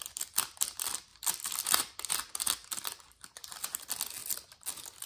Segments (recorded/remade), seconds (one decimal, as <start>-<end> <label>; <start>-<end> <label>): 0.0-1.1 recorded; 1.1-2.1 remade; 2.1-2.6 recorded; 2.6-3.4 remade; 3.4-4.2 recorded; 4.2-5.1 remade